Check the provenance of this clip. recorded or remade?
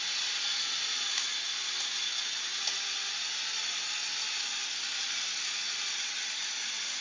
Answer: recorded